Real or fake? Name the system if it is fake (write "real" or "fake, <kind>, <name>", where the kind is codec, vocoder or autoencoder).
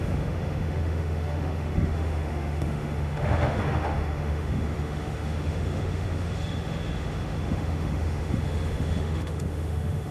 fake, autoencoder, DAC-VAE